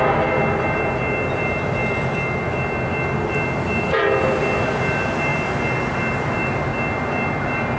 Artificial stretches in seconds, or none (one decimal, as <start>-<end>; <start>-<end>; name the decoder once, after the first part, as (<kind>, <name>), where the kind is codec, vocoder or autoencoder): none